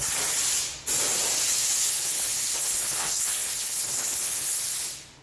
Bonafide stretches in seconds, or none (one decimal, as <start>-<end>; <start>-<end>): 0.0-1.5; 4.6-5.2